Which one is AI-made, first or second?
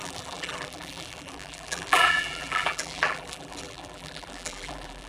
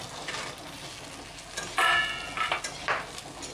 first